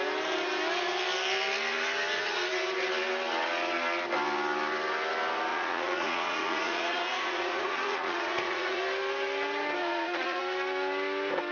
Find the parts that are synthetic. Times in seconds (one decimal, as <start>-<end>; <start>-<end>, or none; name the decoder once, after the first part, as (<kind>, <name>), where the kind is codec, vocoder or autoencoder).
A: 5.5-8.8 (vocoder, Vocos); 9.8-10.4